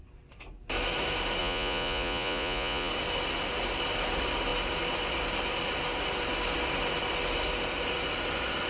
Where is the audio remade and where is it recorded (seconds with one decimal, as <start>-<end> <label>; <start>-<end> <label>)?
0.0-1.4 recorded; 1.4-2.9 remade; 2.9-8.7 recorded